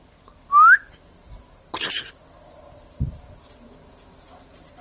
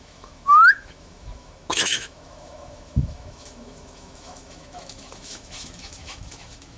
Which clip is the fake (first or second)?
second